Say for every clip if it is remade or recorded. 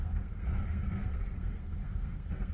remade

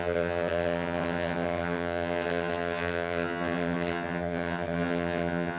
remade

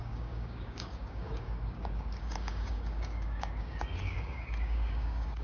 remade